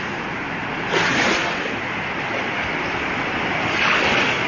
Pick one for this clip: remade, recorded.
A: recorded